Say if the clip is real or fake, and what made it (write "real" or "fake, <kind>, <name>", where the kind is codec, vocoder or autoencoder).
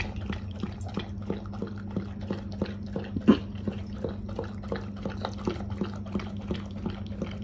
real